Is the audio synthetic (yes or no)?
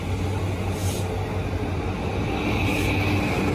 no